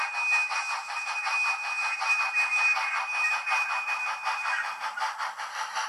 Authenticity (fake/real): real